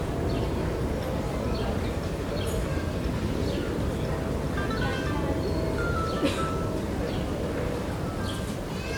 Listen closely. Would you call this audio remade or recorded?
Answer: recorded